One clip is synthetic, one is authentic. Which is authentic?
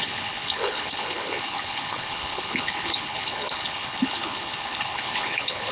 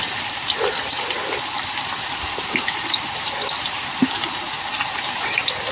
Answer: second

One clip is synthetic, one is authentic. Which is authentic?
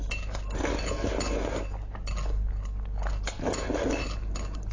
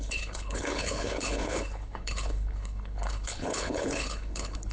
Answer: first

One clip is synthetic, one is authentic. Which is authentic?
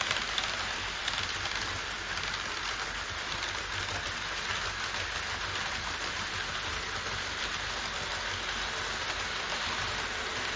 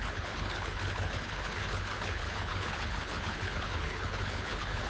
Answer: first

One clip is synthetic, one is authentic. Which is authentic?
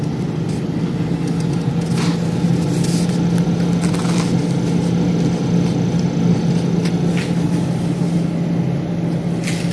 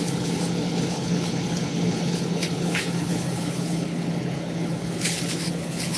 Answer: first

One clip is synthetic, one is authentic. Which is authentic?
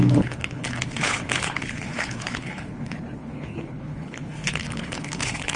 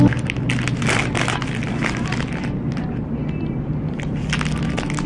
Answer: second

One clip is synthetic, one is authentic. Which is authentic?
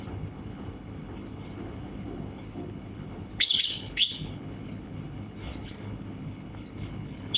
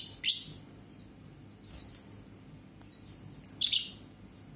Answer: second